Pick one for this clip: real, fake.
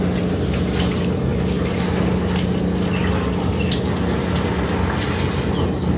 real